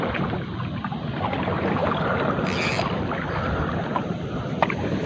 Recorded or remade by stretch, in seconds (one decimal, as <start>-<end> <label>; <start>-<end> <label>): 0.0-5.1 remade